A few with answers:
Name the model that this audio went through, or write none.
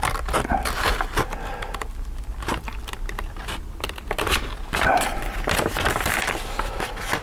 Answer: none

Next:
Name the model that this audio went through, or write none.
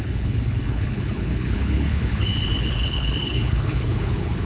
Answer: codec, HILCodec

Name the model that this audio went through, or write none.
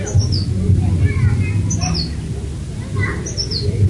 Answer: none